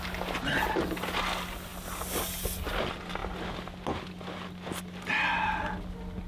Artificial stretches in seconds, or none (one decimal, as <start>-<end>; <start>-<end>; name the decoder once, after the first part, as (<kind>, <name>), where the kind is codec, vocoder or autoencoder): none